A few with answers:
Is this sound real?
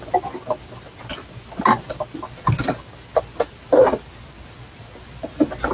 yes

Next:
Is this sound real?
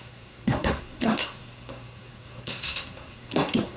no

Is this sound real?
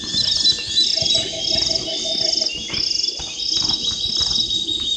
yes